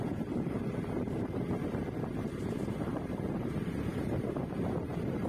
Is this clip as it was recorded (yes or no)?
no